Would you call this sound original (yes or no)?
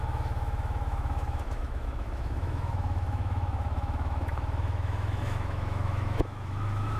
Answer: no